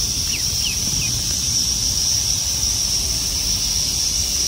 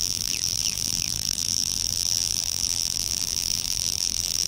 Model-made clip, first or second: second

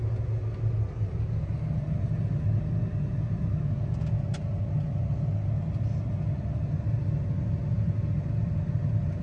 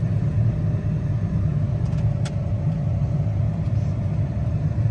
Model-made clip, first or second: second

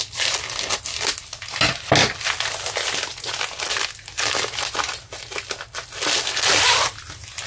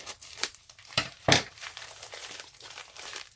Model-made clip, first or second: second